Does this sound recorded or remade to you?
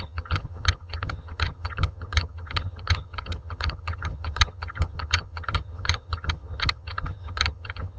remade